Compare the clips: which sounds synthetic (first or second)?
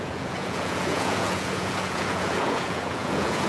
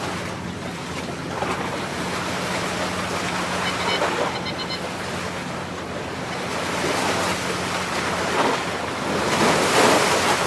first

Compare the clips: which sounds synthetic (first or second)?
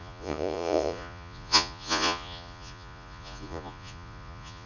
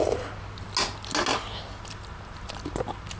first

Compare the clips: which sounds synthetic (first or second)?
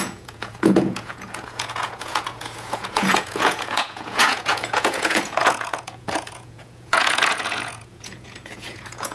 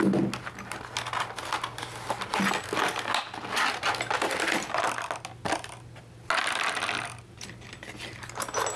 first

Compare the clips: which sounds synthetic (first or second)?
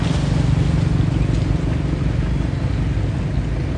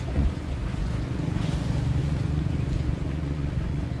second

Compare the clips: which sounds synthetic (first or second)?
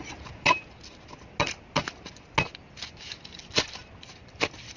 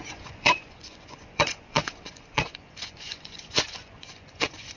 second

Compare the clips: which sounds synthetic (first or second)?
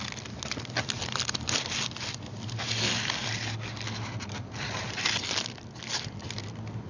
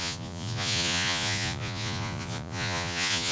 second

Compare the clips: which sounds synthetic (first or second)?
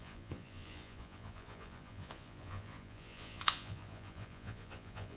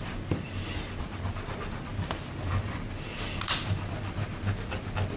first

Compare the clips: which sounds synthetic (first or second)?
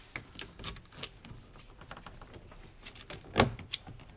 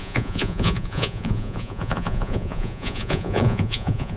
second